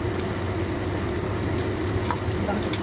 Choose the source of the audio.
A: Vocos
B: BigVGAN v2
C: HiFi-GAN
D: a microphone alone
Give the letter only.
D